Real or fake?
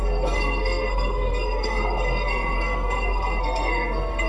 fake